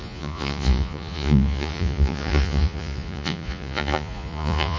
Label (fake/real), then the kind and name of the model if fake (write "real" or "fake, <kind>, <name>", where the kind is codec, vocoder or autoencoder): fake, vocoder, Vocos